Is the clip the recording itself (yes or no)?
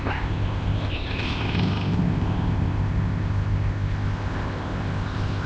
no